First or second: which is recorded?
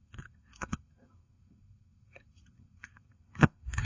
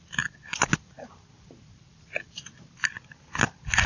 second